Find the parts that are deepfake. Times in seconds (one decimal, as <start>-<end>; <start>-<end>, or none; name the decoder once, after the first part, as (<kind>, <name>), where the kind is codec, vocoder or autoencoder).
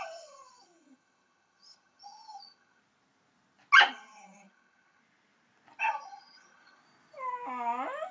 0.0-2.8 (vocoder, HiFi-GAN); 3.9-5.0; 5.8-6.8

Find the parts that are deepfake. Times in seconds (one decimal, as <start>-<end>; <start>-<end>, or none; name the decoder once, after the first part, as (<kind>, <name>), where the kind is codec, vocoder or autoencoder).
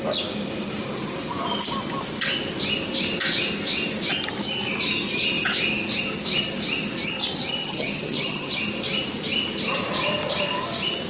7.6-8.6 (vocoder, HiFi-GAN)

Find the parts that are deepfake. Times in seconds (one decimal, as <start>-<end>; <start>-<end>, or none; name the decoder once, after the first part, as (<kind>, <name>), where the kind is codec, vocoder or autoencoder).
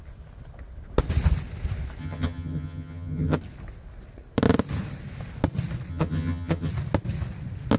2.0-3.4 (vocoder, HiFi-GAN); 5.9-6.7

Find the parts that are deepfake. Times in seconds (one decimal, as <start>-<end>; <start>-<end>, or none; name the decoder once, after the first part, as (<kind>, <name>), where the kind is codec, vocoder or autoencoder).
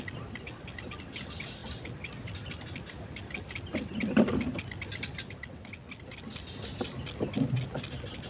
none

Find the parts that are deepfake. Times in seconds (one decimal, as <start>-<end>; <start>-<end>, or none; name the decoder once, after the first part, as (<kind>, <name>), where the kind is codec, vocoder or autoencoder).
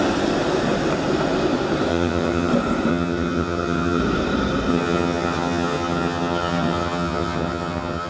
1.9-2.5 (vocoder, HiFi-GAN); 2.9-4.0; 4.7-8.1